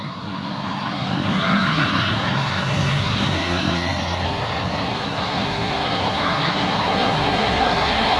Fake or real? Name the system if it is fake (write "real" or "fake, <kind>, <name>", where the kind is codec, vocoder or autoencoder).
fake, codec, SNAC